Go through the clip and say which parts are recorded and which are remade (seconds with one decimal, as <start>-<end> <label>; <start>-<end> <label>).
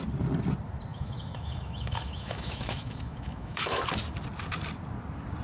0.0-0.9 recorded; 0.9-3.8 remade; 3.8-5.4 recorded